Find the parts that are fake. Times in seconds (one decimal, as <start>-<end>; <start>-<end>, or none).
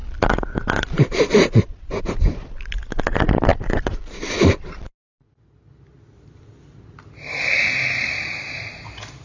none